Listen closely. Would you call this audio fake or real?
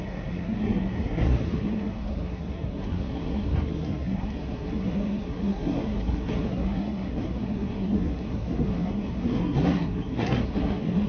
fake